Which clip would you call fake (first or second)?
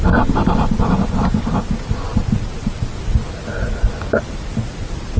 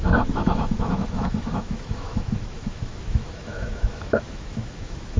second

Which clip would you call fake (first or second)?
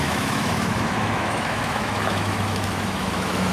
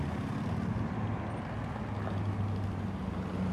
first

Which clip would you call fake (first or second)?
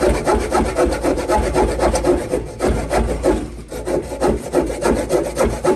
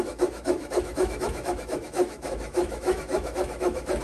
second